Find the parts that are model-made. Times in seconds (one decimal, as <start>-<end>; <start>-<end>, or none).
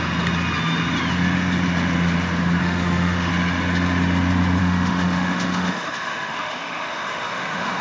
2.6-3.3; 4.6-7.8